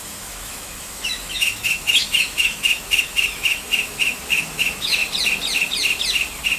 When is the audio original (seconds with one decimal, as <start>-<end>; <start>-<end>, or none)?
5.0-6.6